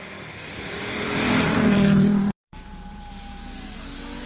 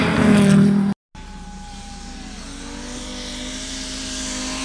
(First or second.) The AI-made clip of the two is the first